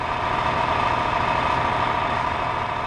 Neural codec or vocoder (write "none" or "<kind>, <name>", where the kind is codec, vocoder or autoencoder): none